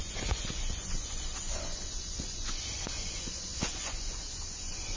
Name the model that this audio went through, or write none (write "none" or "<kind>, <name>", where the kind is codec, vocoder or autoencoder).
vocoder, Vocos